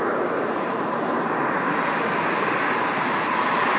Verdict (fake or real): real